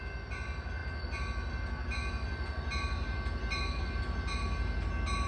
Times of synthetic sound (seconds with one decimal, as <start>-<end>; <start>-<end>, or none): none